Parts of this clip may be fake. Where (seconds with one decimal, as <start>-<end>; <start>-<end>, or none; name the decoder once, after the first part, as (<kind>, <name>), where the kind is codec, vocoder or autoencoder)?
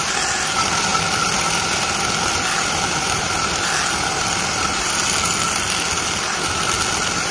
none